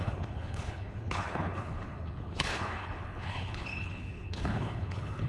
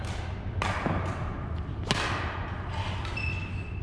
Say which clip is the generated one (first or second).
first